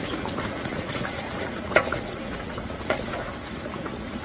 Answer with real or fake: fake